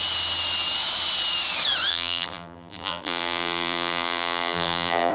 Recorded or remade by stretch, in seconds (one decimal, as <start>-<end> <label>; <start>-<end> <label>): 0.0-1.9 recorded; 1.9-5.1 remade